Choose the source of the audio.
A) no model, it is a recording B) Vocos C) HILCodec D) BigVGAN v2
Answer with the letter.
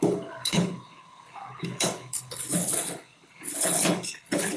C